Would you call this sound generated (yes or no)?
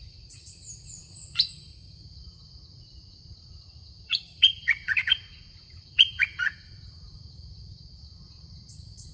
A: yes